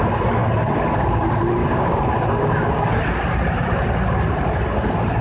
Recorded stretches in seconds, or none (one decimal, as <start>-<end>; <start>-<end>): 0.0-1.6; 2.9-5.2